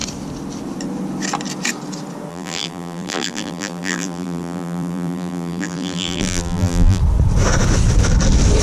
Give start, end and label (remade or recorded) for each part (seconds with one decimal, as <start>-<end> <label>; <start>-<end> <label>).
0.0-2.3 recorded; 2.3-7.0 remade; 7.0-8.6 recorded